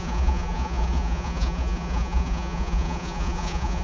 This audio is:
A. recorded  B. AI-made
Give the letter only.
B